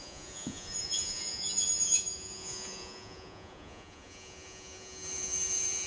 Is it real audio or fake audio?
fake